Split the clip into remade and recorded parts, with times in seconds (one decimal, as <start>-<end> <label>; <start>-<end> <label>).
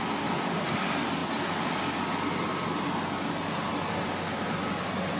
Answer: 0.0-5.2 recorded